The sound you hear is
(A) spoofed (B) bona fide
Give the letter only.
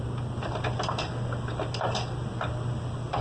B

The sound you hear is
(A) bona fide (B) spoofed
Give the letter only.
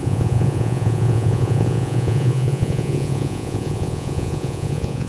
B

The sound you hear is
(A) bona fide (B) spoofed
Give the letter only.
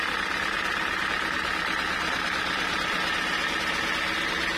A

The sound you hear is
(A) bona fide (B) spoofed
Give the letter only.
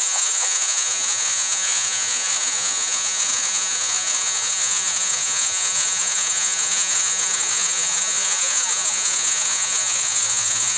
B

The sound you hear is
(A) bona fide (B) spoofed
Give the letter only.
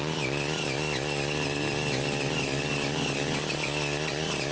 A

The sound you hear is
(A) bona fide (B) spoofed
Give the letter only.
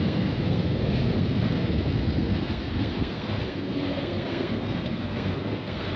B